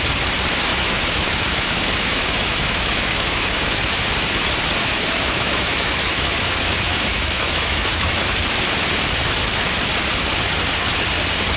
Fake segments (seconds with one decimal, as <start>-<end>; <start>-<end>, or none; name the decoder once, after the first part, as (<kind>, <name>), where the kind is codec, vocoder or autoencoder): 0.7-3.9 (autoencoder, DAC-VAE); 4.8-8.2